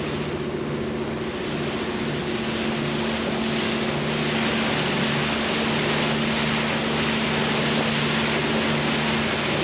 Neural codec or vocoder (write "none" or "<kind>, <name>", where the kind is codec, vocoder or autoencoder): none